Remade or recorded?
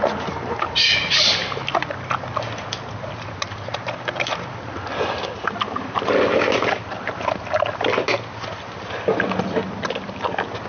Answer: recorded